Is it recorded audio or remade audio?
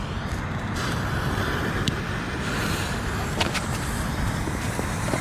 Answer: recorded